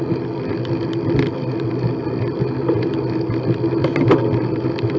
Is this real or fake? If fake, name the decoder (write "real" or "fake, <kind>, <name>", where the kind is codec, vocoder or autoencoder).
real